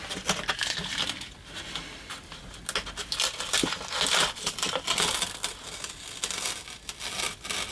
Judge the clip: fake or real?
real